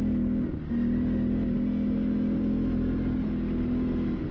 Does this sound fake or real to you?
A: real